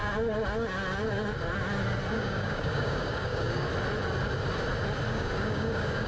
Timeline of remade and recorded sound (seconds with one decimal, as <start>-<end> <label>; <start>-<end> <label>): 0.0-2.1 recorded; 2.1-3.7 remade; 3.7-5.1 recorded; 5.1-6.1 remade